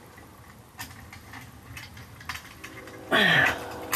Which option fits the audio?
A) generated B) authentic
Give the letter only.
B